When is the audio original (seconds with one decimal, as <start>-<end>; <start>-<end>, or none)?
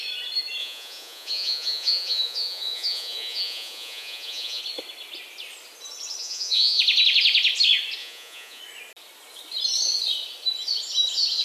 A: 0.0-0.6; 4.6-6.2; 6.8-8.0; 8.6-11.4